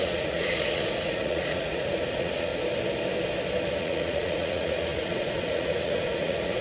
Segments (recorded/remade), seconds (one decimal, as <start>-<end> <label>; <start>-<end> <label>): 0.0-2.5 remade; 2.5-3.8 recorded; 3.8-6.6 remade